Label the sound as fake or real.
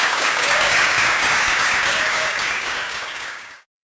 fake